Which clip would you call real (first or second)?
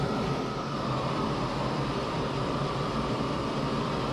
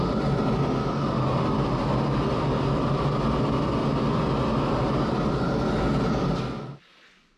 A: second